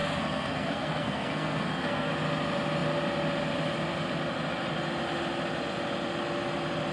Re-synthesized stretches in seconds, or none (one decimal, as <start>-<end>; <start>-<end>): 0.0-2.1